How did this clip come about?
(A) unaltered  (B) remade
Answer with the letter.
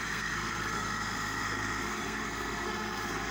B